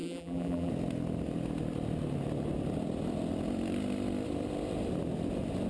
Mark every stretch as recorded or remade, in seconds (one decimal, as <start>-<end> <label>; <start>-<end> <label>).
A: 0.0-0.7 remade; 0.7-5.7 recorded